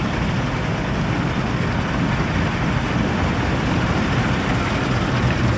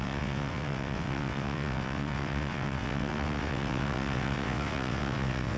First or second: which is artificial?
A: second